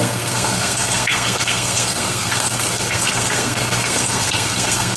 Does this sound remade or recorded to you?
remade